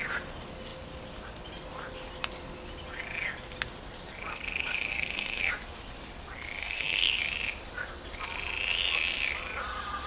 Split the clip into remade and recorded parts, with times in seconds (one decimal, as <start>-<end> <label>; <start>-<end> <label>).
0.0-4.3 recorded; 4.3-5.5 remade; 5.5-6.6 recorded; 6.6-7.2 remade; 7.2-10.1 recorded